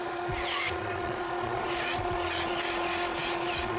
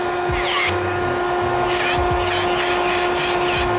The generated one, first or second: first